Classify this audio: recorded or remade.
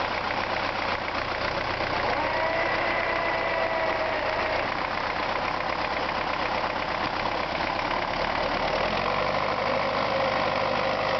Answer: recorded